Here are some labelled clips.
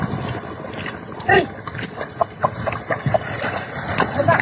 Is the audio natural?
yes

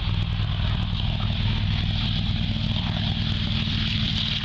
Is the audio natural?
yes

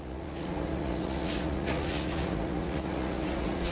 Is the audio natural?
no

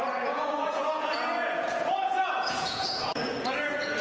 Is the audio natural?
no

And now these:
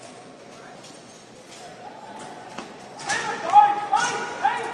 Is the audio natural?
no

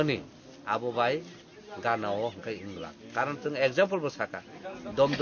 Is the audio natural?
yes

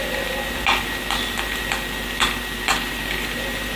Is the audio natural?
yes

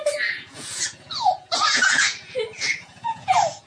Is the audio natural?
no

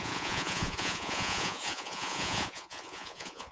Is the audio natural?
no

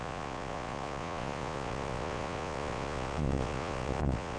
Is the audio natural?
no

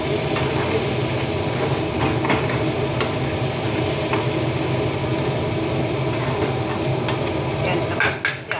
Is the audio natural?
yes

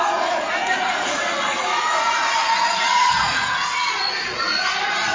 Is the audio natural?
no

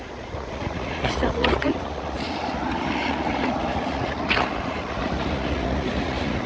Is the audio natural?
no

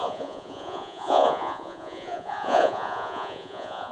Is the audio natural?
no